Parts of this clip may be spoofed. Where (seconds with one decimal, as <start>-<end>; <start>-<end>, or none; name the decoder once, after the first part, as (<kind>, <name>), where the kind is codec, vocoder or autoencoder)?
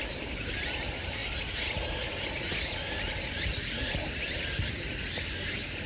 none